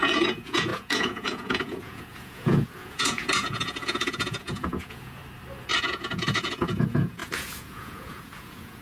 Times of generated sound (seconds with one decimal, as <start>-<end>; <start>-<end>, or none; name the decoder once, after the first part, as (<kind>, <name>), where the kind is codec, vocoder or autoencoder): 0.0-5.2 (vocoder, Vocos); 5.8-8.8